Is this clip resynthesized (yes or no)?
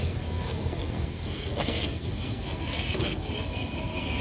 yes